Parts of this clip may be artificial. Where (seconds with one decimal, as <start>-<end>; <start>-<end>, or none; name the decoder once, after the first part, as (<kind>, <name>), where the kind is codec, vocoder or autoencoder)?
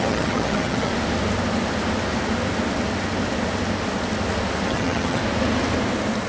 0.0-0.9 (vocoder, HiFi-GAN); 4.7-5.2